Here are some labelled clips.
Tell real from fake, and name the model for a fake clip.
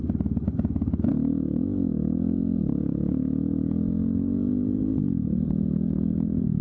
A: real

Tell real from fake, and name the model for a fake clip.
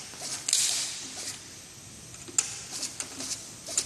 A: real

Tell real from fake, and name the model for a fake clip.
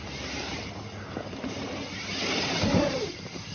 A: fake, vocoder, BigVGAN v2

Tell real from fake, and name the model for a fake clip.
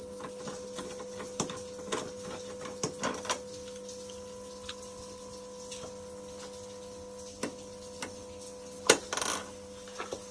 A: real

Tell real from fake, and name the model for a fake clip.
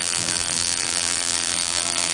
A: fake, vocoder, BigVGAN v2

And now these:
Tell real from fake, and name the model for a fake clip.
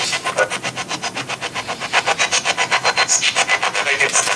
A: real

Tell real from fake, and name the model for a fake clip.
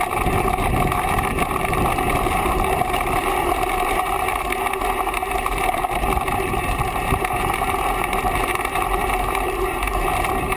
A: fake, vocoder, BigVGAN v2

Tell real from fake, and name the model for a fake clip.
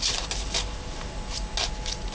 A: real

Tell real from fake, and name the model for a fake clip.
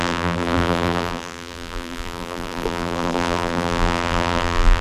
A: fake, vocoder, BigVGAN v2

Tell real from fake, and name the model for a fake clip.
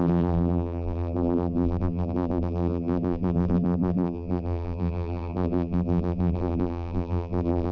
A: fake, vocoder, BigVGAN v2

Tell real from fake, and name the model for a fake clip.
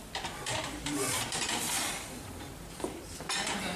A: fake, vocoder, BigVGAN v2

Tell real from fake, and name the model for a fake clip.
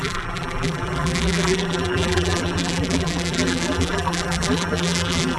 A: fake, vocoder, BigVGAN v2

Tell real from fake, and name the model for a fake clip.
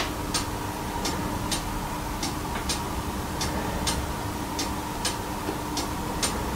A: real